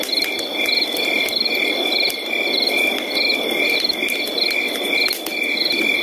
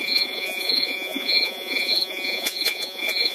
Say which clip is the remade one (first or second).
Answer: second